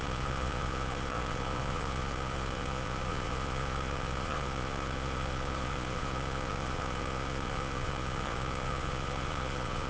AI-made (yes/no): yes